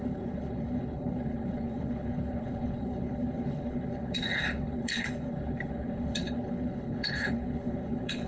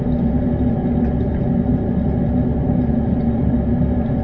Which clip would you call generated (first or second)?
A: first